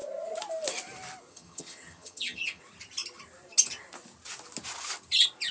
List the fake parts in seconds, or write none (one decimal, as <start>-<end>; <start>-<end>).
1.3-2.6